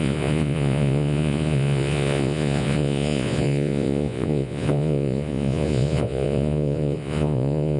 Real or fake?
fake